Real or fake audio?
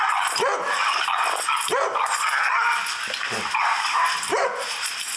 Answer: real